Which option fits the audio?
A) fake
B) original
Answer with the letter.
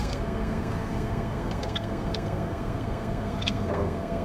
A